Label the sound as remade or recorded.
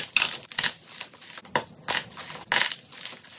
recorded